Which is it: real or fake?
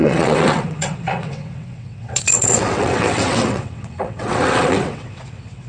fake